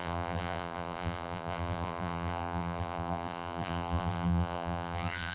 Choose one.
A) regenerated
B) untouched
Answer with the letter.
A